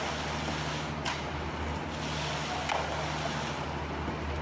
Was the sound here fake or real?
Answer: real